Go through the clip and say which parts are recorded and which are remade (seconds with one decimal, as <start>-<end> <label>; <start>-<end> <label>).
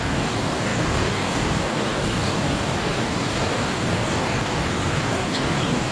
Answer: 0.0-5.9 remade